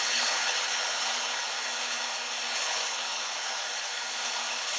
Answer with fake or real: fake